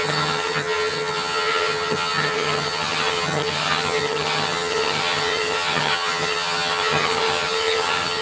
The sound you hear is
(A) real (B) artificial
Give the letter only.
B